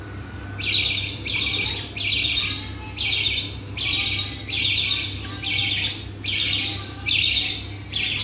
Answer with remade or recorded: recorded